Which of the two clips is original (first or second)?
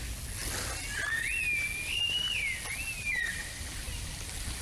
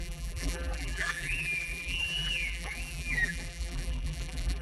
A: first